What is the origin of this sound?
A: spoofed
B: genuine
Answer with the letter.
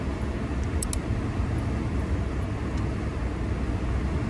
B